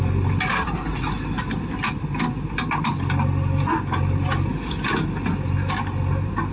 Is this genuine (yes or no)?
yes